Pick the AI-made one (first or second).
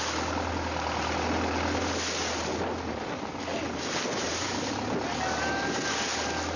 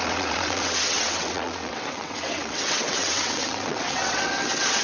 second